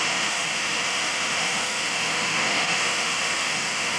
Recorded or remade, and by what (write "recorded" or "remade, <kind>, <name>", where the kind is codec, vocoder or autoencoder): remade, autoencoder, DAC-VAE